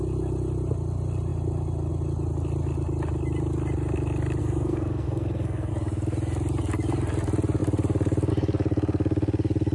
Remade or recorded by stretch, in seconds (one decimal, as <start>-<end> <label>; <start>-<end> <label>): 0.0-4.4 recorded; 4.4-5.7 remade; 5.7-9.7 recorded

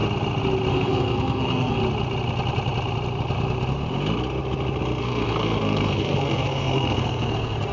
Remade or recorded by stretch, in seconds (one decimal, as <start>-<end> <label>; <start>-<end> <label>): 0.0-0.7 recorded; 0.7-1.8 remade; 1.8-5.0 recorded; 5.0-7.7 remade

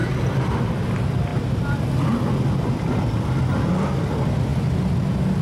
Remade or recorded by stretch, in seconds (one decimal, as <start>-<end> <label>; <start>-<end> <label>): 0.0-5.4 recorded